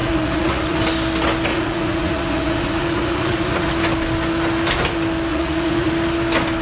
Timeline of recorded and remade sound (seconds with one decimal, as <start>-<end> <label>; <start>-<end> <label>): 0.0-0.8 remade; 0.8-1.5 recorded; 1.5-3.7 remade; 3.7-5.3 recorded; 5.3-5.9 remade; 5.9-6.6 recorded